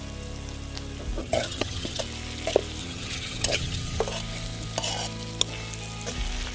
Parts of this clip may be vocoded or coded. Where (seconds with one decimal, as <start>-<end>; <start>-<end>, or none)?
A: 1.2-2.0; 2.8-4.0